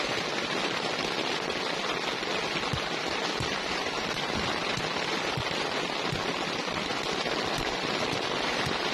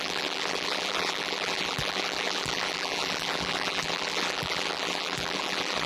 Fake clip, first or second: second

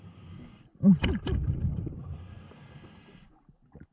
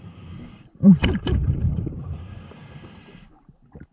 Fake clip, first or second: second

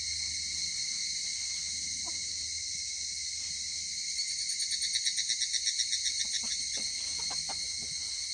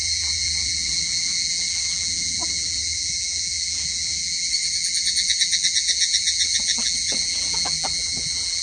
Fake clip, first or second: second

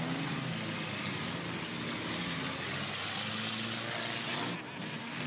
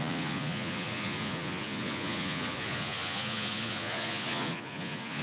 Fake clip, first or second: second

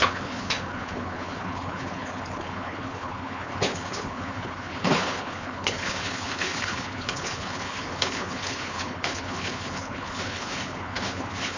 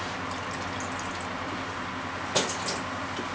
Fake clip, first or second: first